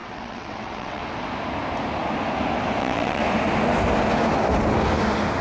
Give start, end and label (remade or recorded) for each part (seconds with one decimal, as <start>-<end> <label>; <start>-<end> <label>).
0.0-1.0 remade; 1.0-2.8 recorded; 2.8-3.2 remade; 3.2-5.4 recorded